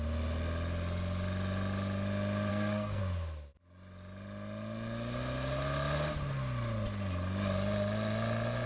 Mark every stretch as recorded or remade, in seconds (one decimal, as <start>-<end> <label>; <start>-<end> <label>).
0.0-2.5 recorded; 2.5-3.0 remade; 3.0-8.7 recorded